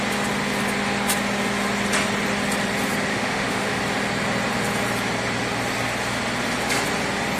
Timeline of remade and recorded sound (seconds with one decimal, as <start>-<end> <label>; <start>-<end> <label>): 0.0-3.1 recorded; 3.1-3.8 remade; 3.8-7.4 recorded